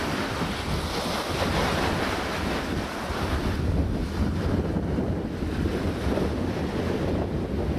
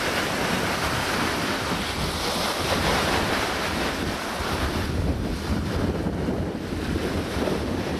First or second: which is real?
first